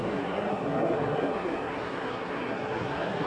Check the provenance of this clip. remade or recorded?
remade